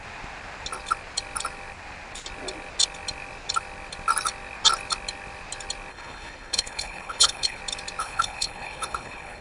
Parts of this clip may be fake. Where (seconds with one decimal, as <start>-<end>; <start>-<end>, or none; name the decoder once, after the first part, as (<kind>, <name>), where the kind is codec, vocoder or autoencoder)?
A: 5.9-7.6 (codec, HILCodec); 8.0-9.4